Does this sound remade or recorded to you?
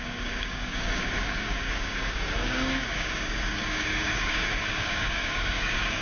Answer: remade